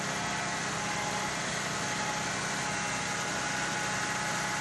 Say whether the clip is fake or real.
real